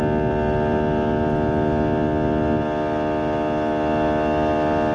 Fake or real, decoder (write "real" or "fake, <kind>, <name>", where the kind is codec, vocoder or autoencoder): real